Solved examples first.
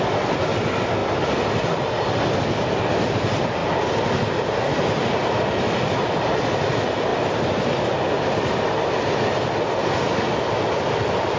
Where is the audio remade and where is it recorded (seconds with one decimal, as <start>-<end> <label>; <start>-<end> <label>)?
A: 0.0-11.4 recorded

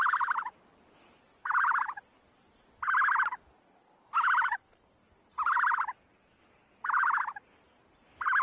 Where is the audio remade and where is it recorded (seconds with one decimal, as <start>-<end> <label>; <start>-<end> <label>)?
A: 0.0-1.4 recorded; 1.4-5.8 remade; 5.8-8.4 recorded

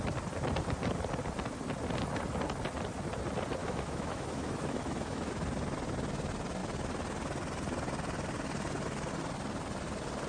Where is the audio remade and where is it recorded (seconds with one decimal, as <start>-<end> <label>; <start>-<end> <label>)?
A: 0.0-3.6 recorded; 3.6-5.3 remade; 5.3-10.3 recorded

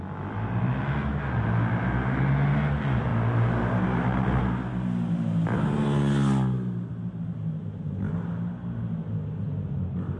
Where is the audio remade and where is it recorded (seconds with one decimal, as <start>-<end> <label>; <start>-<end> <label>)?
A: 0.0-10.2 recorded